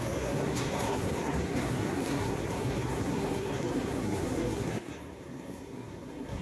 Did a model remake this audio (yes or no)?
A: yes